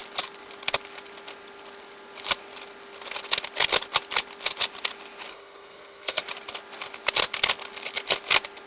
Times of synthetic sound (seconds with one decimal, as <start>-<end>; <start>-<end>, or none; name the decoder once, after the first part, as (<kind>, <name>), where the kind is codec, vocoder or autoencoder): 5.3-6.2 (codec, SNAC)